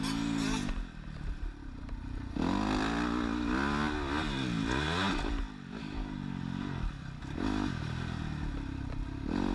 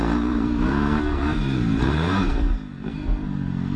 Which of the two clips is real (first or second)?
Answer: first